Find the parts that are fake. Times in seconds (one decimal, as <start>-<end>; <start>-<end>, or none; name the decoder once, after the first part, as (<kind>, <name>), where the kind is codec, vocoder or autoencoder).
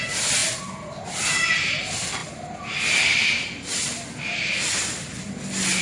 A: none